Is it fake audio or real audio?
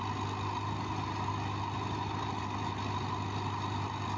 real